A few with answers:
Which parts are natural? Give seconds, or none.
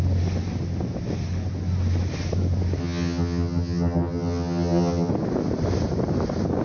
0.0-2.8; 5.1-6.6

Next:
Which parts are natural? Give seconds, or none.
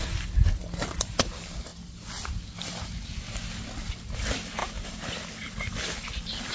0.0-6.5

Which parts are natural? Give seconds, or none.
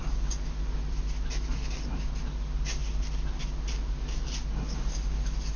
0.0-5.6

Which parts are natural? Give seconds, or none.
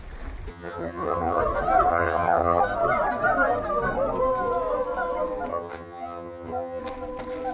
0.0-0.5; 1.4-1.9; 2.6-5.5; 6.8-7.5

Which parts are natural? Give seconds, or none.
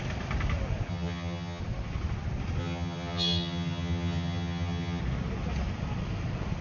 0.0-0.9; 1.6-2.6; 5.0-6.6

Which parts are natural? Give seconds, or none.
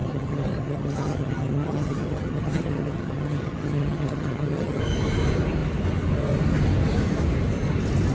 4.8-8.1